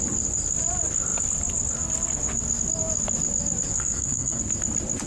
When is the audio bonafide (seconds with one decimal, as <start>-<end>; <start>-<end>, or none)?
0.0-3.7; 4.4-5.1